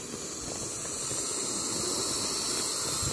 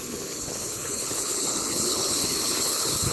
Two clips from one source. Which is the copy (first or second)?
second